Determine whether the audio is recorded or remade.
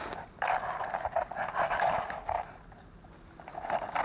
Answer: recorded